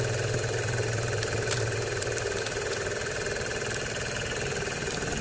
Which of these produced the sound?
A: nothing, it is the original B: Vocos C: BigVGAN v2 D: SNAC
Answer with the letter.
A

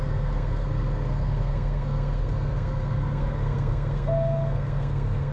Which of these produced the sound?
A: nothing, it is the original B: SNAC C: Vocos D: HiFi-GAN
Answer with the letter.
B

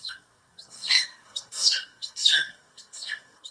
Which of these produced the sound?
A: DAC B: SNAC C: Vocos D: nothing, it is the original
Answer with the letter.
B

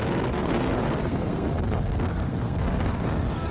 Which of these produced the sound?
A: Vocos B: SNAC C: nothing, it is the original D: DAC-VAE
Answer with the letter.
B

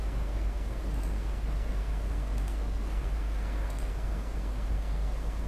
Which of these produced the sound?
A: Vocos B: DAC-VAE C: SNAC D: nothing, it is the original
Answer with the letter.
C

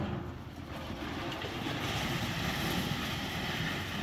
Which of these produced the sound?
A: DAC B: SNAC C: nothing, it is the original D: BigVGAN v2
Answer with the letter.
C